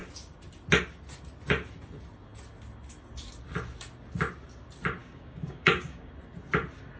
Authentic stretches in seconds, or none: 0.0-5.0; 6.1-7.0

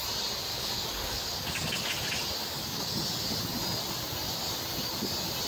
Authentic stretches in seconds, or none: 0.0-0.5; 1.9-2.4; 3.0-5.5

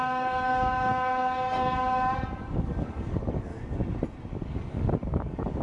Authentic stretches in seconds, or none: 3.5-4.3